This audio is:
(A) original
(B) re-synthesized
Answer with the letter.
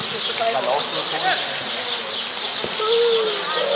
A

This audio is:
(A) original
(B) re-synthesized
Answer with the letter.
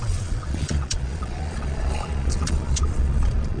B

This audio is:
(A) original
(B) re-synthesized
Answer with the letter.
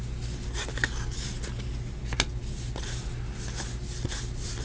A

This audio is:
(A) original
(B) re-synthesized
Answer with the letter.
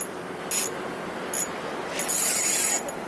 A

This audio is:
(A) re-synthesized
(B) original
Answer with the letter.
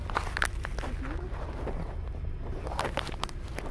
B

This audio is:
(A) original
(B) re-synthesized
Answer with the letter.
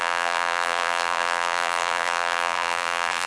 B